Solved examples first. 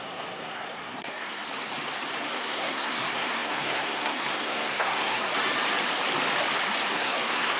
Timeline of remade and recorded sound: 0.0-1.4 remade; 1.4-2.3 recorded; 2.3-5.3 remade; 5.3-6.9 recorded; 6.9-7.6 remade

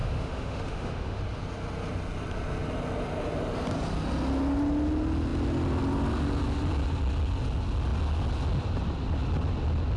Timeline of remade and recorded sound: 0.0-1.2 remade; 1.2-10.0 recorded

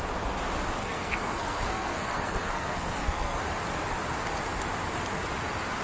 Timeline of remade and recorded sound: 0.0-0.8 recorded; 0.8-3.4 remade; 3.4-5.8 recorded

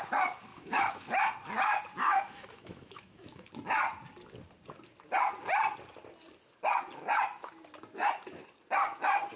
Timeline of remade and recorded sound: 0.0-0.5 recorded; 0.5-1.1 remade; 1.1-2.0 recorded; 2.0-3.5 remade; 3.5-9.4 recorded